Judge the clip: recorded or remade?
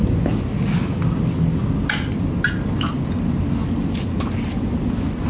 recorded